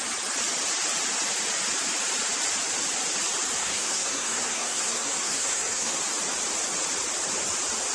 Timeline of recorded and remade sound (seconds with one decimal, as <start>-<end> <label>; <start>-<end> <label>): 0.0-3.6 recorded; 3.6-6.0 remade; 6.0-7.9 recorded